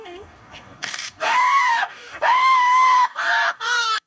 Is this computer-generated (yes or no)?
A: yes